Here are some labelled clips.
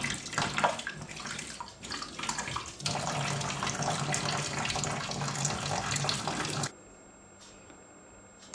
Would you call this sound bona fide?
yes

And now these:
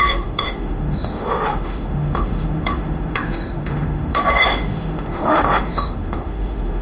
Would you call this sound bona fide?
no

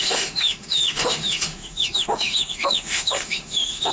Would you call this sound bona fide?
no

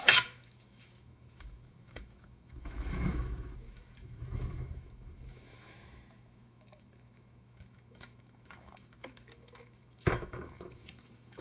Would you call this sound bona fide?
no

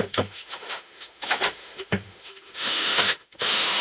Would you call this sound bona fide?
no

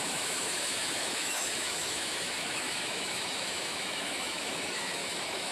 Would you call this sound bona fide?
no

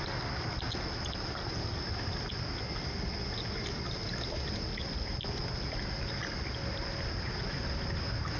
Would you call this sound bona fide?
yes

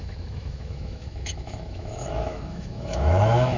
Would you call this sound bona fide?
no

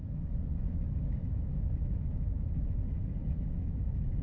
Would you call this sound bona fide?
no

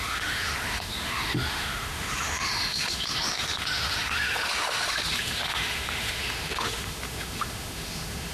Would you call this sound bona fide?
no